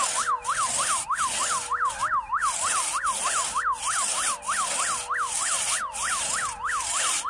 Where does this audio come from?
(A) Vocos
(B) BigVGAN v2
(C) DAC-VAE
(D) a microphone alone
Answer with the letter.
D